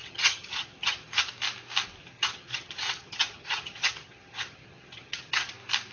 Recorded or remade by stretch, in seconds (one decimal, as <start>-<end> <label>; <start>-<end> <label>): 0.0-1.3 remade; 1.3-2.0 recorded; 2.0-5.5 remade; 5.5-5.9 recorded